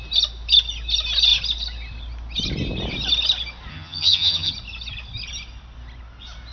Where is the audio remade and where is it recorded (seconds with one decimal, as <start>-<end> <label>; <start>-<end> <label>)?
0.0-3.7 recorded; 3.7-4.5 remade; 4.5-6.5 recorded